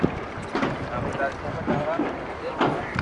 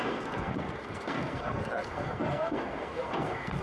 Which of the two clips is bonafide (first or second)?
first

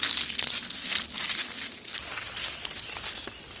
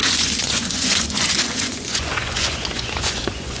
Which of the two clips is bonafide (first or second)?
first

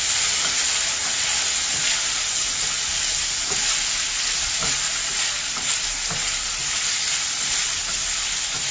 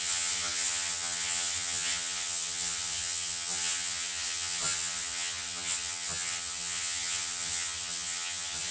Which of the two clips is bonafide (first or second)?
first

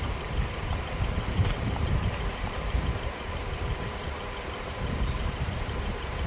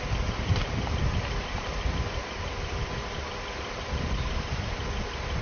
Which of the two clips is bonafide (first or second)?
second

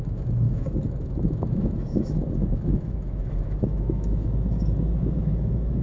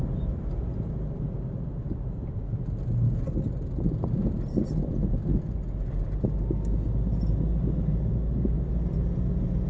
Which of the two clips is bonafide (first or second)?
second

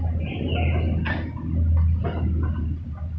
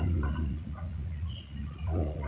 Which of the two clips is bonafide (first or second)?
first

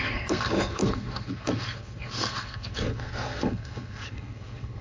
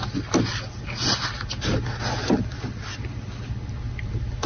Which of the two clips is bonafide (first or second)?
second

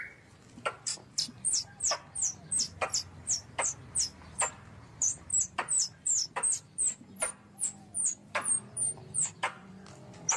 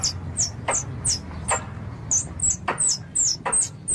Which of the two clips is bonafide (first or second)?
second